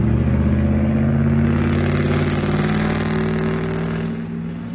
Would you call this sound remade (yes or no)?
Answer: no